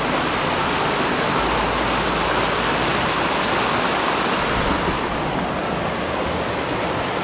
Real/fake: real